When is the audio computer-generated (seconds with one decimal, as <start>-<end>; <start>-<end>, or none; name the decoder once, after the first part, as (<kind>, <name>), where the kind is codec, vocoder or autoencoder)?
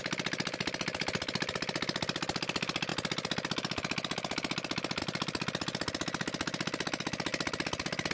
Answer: none